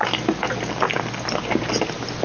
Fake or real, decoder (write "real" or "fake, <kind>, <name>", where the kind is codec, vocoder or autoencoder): real